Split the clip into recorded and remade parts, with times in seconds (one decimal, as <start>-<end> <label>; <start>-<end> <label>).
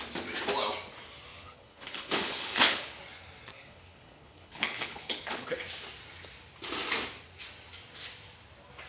0.0-1.3 recorded; 1.3-3.0 remade; 3.0-3.5 recorded; 3.5-5.6 remade; 5.6-8.9 recorded